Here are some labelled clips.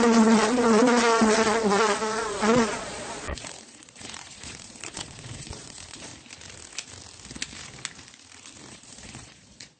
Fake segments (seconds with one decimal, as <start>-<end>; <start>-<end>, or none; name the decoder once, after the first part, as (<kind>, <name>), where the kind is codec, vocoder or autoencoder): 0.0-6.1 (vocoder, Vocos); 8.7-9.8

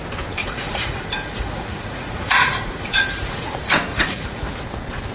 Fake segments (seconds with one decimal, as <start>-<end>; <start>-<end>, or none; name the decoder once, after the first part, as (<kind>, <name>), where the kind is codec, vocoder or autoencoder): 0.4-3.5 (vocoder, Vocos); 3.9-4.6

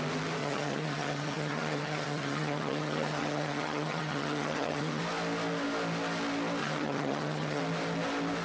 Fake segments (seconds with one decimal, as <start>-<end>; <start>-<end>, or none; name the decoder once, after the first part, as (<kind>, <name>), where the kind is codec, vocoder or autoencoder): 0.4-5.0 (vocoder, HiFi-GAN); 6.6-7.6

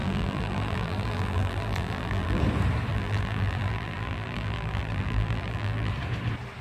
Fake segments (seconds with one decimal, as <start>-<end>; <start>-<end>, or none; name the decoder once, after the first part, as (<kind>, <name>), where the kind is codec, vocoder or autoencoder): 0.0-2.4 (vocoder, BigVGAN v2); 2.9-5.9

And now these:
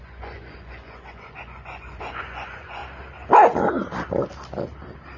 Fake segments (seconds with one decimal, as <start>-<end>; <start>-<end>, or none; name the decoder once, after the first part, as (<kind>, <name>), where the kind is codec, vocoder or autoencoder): 0.0-2.8 (vocoder, Vocos)

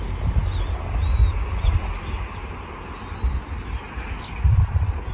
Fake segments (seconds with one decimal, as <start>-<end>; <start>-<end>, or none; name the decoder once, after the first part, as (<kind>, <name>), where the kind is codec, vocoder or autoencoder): none

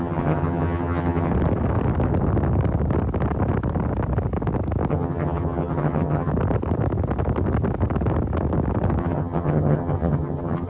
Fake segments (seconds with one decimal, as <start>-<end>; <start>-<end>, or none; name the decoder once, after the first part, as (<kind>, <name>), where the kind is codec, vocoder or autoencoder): 0.0-1.3 (vocoder, HiFi-GAN); 4.9-6.3; 9.0-10.7